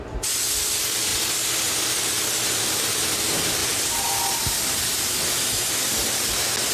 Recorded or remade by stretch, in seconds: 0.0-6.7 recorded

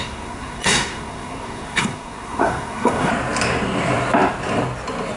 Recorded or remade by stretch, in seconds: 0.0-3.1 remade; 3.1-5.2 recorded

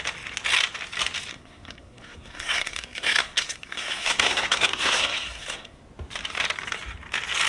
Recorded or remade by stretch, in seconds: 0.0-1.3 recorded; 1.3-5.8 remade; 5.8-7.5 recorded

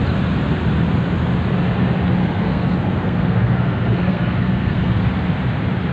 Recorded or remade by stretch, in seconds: 0.0-2.2 recorded; 2.2-5.0 remade; 5.0-5.9 recorded

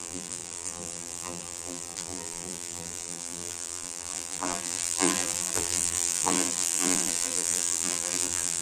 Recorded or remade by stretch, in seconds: 0.0-8.6 remade